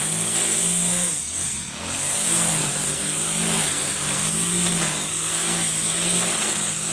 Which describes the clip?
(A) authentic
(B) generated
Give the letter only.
B